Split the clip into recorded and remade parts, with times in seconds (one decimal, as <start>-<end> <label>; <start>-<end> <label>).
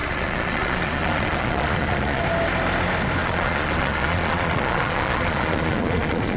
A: 0.0-2.2 remade; 2.2-3.2 recorded; 3.2-6.4 remade